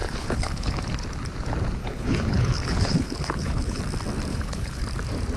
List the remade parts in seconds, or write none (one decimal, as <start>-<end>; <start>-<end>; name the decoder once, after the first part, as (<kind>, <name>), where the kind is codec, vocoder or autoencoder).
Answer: 0.0-0.8 (codec, HILCodec); 1.8-3.8; 4.3-4.8